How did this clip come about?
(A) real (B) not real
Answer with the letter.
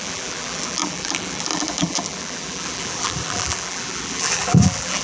B